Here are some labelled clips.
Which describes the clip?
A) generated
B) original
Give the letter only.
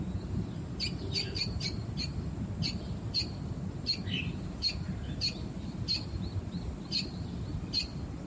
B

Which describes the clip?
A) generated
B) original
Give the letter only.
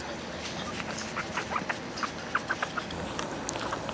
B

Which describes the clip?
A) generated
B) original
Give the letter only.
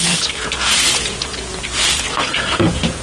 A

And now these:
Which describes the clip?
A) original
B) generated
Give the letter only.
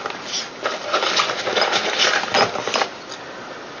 A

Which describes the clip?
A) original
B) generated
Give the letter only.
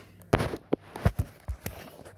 A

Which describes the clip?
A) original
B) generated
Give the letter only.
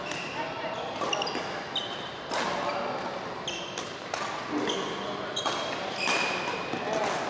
A